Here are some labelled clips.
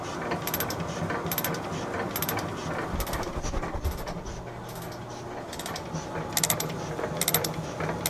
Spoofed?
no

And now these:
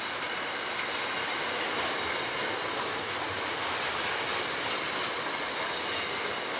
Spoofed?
no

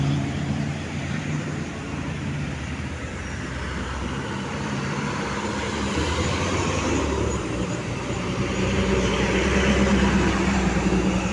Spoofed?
yes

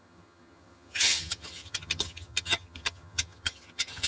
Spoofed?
yes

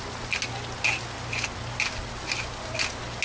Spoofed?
no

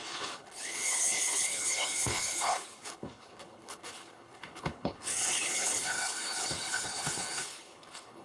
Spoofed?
yes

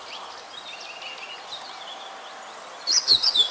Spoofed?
no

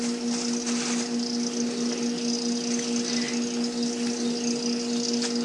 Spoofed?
no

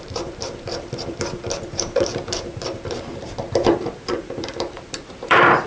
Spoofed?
yes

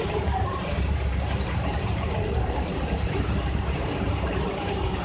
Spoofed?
yes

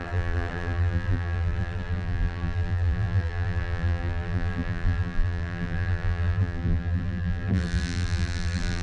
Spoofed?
yes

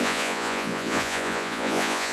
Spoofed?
yes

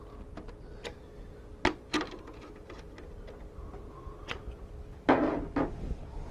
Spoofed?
no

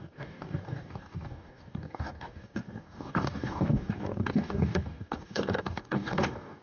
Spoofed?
yes